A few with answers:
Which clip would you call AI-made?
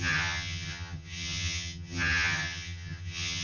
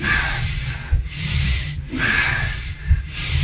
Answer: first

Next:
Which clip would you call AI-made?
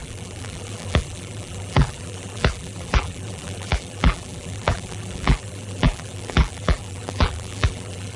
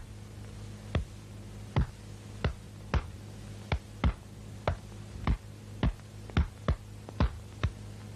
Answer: first